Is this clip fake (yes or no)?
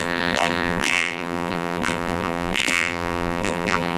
yes